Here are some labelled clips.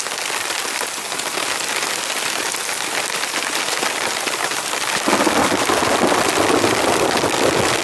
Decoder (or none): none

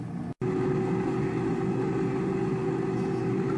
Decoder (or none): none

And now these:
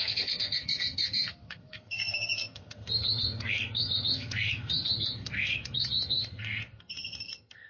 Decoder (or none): codec, SNAC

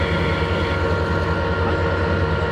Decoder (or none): none